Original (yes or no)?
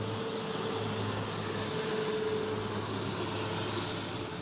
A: yes